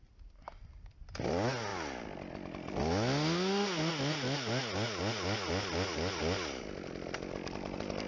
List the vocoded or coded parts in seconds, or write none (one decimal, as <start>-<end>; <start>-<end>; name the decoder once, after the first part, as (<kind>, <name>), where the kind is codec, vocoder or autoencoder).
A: none